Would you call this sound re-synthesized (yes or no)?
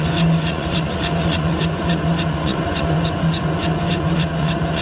yes